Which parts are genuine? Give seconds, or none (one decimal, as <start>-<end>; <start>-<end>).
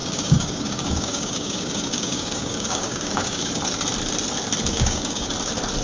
3.5-4.7; 5.3-5.8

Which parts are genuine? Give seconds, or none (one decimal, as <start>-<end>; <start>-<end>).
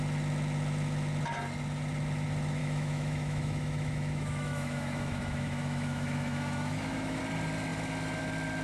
0.0-2.6; 7.2-8.6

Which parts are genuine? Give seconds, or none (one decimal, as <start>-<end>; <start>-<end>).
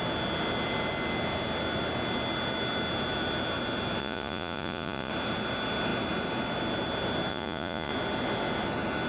0.0-4.0; 5.1-7.3; 7.9-9.1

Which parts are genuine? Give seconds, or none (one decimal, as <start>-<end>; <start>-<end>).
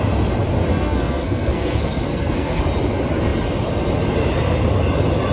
0.0-0.7; 2.6-5.3